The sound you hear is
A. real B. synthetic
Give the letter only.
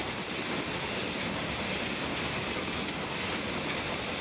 A